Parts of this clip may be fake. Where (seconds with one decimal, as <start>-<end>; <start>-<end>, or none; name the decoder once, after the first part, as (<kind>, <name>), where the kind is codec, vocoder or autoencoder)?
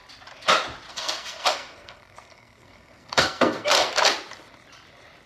0.9-3.9 (codec, SNAC)